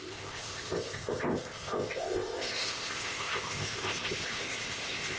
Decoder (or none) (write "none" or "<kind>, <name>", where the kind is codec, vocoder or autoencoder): codec, ZipCodec